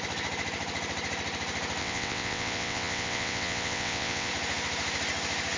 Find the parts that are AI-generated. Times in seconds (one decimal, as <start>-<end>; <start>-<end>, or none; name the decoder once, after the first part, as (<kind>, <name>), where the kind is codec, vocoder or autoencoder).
1.8-4.3 (vocoder, WaveNeXt)